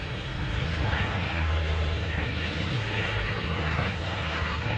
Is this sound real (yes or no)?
no